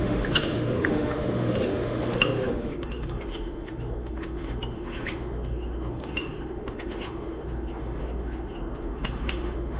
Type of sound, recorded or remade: remade